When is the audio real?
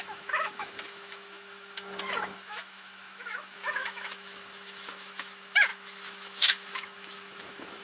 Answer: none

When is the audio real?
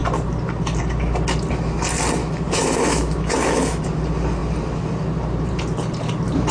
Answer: 0.0-2.2; 4.0-6.5